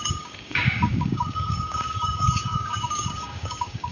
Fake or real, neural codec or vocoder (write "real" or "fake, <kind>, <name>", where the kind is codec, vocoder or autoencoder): fake, codec, DAC